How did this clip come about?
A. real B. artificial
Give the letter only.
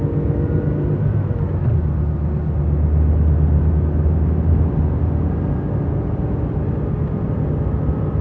A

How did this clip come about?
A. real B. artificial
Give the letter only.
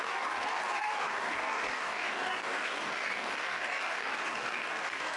B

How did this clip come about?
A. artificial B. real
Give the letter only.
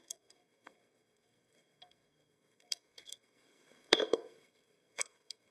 A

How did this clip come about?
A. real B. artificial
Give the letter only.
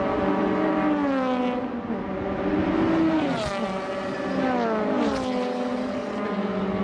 A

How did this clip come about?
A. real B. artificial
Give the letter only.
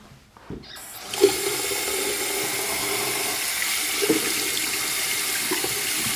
A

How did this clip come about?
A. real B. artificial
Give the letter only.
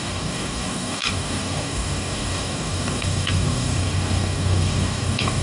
B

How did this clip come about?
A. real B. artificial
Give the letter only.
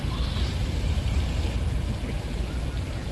B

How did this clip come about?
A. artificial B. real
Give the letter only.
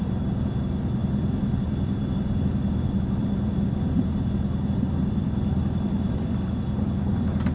A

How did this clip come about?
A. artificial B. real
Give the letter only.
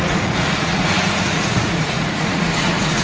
A